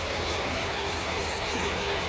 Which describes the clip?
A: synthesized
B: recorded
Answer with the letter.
A